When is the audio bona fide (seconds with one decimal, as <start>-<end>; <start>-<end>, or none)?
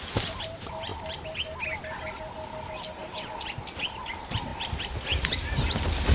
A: 0.0-6.1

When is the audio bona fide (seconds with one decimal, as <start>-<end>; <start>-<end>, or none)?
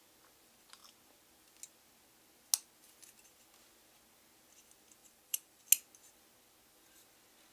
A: 0.0-5.0; 5.7-7.5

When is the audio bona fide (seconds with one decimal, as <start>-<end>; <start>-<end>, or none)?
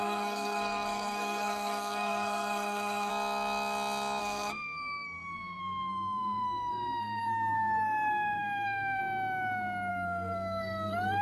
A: 3.1-4.2; 9.0-9.9